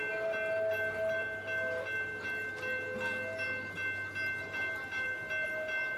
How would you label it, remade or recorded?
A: recorded